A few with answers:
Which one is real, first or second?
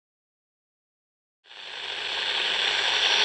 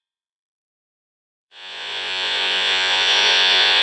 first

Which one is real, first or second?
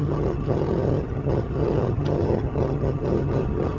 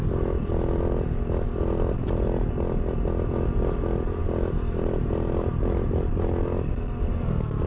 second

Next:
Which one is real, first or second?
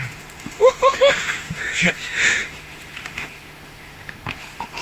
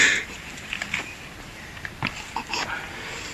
second